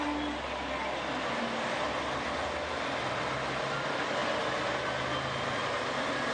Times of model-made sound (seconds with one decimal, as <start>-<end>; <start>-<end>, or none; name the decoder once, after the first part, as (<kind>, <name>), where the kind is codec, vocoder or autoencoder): none